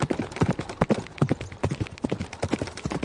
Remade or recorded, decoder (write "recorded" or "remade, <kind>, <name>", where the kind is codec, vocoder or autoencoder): recorded